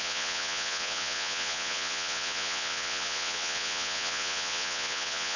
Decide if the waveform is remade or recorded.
remade